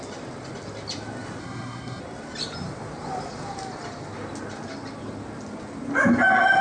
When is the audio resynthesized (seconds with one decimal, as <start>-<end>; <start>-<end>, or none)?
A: 1.4-2.0